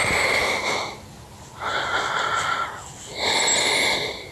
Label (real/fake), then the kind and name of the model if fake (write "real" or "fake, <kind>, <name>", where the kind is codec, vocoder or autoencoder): real